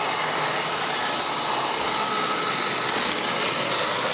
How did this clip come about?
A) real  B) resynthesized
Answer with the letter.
A